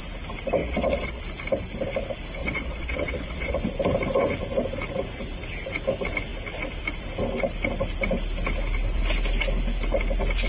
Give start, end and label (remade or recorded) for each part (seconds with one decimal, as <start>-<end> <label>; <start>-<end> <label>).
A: 0.0-0.6 recorded; 0.6-1.2 remade; 1.2-2.4 recorded; 2.4-3.6 remade; 3.6-10.5 recorded